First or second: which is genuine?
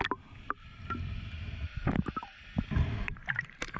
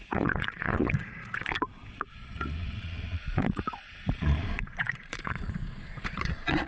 first